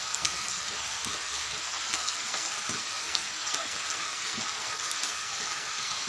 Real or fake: fake